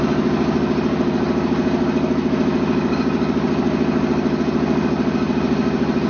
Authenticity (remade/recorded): recorded